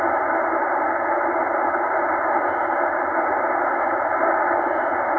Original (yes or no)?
yes